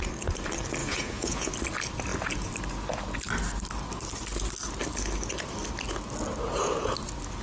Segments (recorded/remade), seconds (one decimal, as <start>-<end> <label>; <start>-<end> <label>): 0.0-0.8 recorded; 0.8-1.5 remade; 1.5-7.4 recorded